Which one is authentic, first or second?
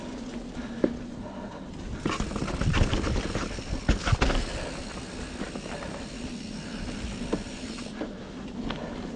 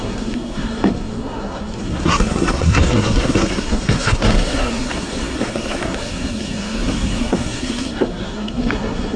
first